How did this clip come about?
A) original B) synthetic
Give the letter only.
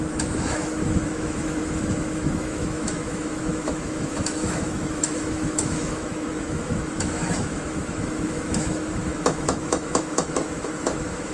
B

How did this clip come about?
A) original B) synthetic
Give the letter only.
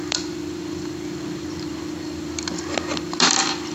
B